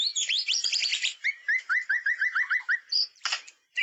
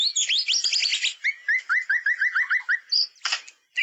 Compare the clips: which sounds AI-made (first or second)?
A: first